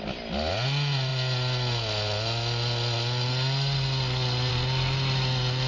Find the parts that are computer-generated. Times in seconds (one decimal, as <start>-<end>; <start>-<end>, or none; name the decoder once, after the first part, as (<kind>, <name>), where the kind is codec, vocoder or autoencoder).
none